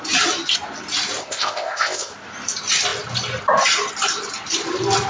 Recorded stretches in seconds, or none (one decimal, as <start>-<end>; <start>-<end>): 0.0-1.2; 2.1-5.1